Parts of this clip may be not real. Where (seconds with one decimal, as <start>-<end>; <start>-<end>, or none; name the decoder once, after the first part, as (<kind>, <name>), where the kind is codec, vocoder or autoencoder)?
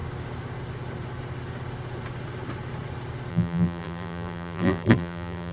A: 3.3-5.5 (vocoder, BigVGAN v2)